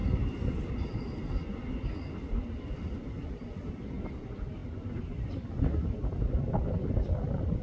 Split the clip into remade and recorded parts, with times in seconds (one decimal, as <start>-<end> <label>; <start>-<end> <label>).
0.0-7.6 recorded